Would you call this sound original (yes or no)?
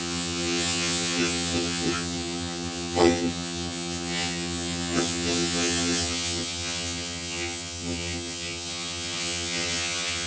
no